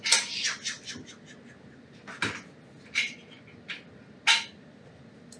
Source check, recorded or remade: recorded